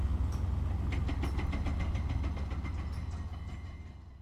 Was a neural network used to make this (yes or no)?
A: no